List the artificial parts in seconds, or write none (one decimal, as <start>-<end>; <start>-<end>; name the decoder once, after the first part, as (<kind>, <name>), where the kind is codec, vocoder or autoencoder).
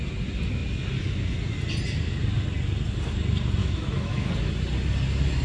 3.6-4.3 (autoencoder, DAC-VAE)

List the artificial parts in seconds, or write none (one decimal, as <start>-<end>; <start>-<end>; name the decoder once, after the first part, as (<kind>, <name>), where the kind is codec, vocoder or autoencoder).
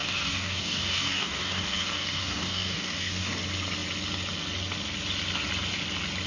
0.0-3.3 (codec, DAC)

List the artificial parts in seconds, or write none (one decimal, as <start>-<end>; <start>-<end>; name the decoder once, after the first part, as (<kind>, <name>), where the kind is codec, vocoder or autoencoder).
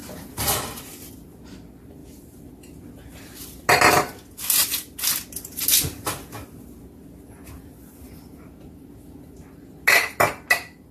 0.0-0.9 (vocoder, BigVGAN v2); 2.0-2.5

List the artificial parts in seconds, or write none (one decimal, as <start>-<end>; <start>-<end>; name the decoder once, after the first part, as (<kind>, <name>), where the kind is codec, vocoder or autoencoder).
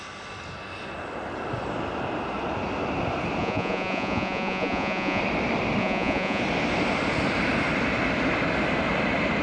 3.4-5.2 (vocoder, Vocos); 5.8-6.4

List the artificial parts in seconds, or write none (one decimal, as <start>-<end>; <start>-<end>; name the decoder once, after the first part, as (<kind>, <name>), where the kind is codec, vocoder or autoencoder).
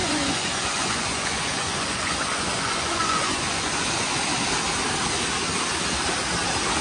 0.0-4.1 (vocoder, Vocos)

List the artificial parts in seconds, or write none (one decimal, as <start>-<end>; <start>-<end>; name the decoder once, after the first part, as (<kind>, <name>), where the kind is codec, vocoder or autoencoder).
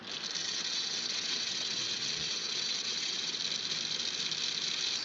0.4-3.4 (vocoder, WaveNeXt)